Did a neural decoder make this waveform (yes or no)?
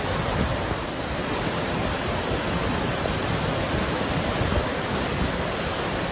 no